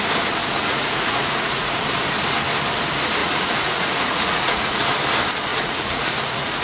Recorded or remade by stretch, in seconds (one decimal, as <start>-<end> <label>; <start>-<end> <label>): 0.0-0.4 recorded; 0.4-1.8 remade; 1.8-3.2 recorded; 3.2-4.9 remade; 4.9-5.5 recorded; 5.5-6.6 remade